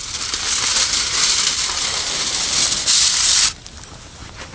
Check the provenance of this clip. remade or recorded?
recorded